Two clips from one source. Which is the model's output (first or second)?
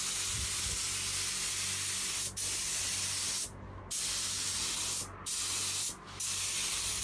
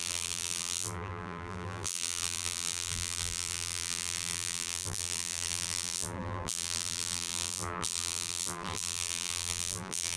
second